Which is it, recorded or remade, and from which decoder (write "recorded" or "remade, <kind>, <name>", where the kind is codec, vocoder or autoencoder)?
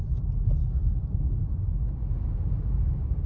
recorded